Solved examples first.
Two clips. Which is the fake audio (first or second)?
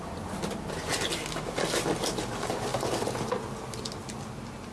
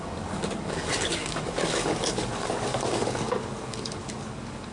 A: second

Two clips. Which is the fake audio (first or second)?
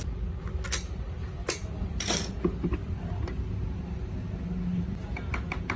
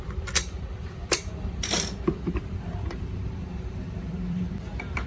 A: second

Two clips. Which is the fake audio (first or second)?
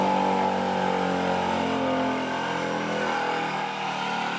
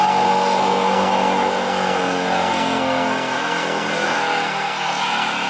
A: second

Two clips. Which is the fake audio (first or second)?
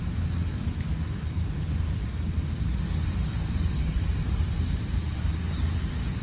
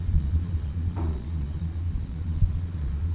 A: second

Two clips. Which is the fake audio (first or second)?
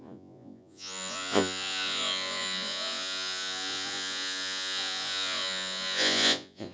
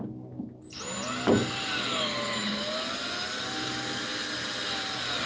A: first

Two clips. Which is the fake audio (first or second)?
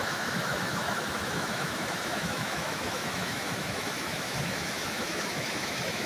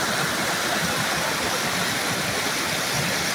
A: first